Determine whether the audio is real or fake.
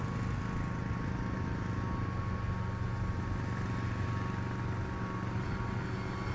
real